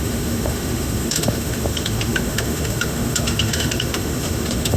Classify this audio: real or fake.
fake